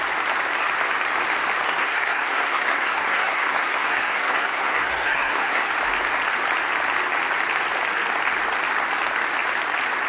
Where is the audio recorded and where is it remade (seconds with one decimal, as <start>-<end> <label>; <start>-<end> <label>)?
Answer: 0.0-1.8 recorded; 1.8-5.7 remade; 5.7-10.1 recorded